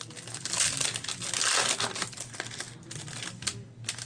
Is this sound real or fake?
real